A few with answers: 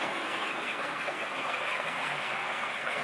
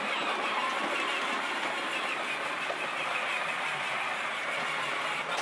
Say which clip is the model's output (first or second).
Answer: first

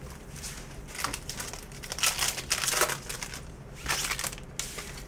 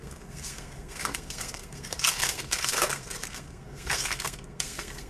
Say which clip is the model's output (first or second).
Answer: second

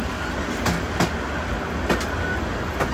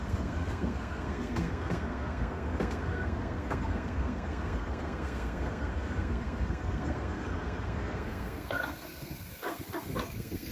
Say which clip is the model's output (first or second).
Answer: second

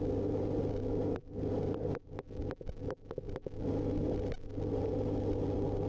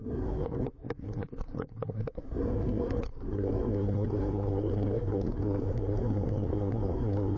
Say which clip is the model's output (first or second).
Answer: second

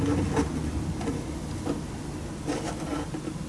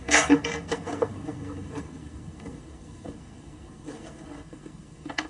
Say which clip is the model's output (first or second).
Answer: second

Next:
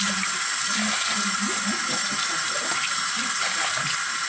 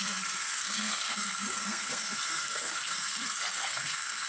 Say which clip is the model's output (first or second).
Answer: second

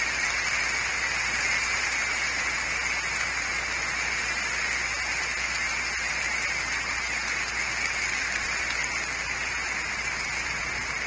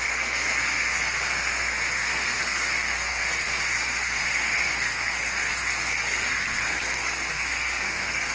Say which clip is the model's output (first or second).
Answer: second